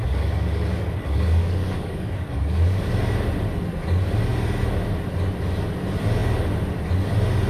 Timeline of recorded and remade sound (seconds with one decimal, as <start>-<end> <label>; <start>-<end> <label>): 0.0-2.9 remade; 2.9-7.5 recorded

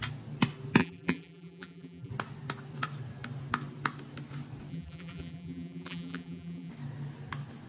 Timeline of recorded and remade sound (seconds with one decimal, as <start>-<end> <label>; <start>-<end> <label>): 0.0-0.8 recorded; 0.8-2.1 remade; 2.1-4.7 recorded; 4.7-6.7 remade; 6.7-7.7 recorded

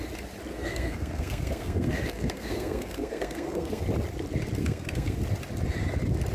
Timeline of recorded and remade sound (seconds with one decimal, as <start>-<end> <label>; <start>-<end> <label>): 0.0-0.5 recorded; 0.5-3.8 remade; 3.8-4.6 recorded; 4.6-5.2 remade; 5.2-6.3 recorded

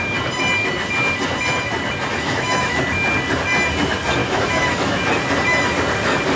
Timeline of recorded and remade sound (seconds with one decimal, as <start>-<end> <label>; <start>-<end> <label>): 0.0-2.1 recorded; 2.1-2.8 remade; 2.8-4.2 recorded; 4.2-5.0 remade; 5.0-6.4 recorded